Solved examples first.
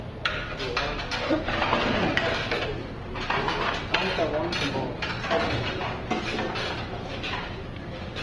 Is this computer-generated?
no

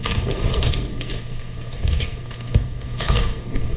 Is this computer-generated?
yes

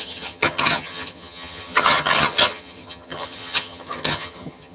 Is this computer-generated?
yes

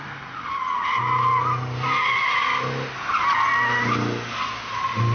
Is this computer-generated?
no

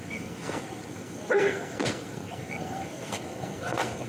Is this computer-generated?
yes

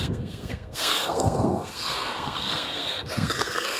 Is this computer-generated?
yes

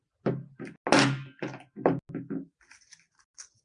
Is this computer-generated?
no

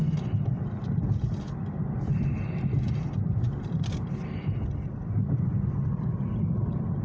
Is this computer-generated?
no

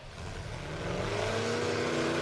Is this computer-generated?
no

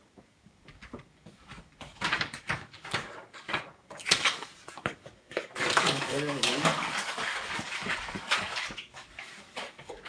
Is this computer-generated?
yes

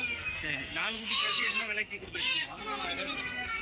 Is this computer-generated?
yes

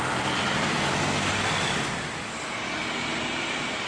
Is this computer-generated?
yes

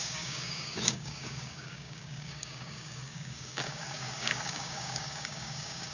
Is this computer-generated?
yes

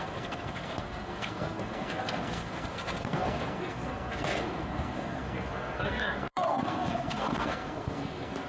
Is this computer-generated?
yes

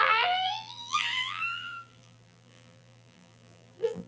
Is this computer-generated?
yes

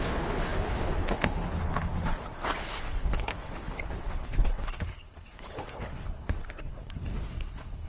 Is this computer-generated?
yes